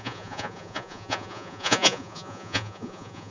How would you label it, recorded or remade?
remade